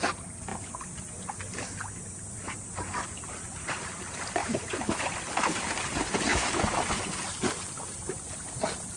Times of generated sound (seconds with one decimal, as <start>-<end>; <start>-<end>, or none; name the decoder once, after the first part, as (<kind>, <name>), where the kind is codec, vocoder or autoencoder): 4.4-5.0 (autoencoder, DAC-VAE); 6.3-6.8